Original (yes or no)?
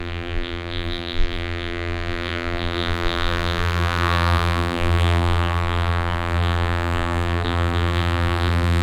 no